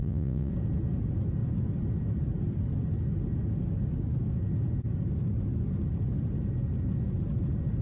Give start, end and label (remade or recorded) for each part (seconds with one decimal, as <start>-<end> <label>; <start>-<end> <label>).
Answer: 0.0-0.5 remade; 0.5-7.8 recorded